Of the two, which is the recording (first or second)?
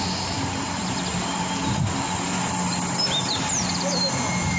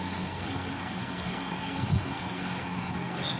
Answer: first